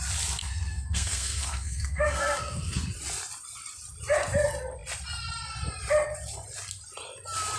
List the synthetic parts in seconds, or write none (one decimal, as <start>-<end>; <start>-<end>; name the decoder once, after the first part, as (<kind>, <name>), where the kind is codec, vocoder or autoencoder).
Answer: 0.4-2.9 (codec, SNAC)